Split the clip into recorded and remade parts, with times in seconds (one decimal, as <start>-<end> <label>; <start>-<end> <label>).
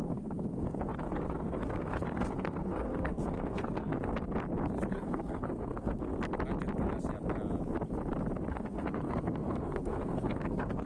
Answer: 0.0-4.1 remade; 4.1-4.9 recorded; 4.9-6.1 remade; 6.1-8.5 recorded; 8.5-10.9 remade